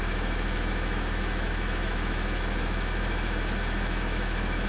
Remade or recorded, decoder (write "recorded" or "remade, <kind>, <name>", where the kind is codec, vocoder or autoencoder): remade, autoencoder, DAC-VAE